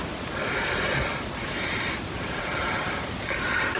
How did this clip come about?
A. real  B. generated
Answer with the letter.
B